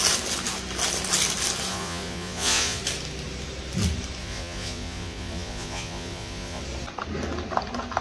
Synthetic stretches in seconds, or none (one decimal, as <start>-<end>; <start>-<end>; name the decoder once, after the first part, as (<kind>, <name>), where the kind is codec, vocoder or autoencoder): 1.7-2.8 (vocoder, Vocos); 4.2-6.6